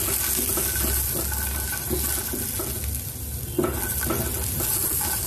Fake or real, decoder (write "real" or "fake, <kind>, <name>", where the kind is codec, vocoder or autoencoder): real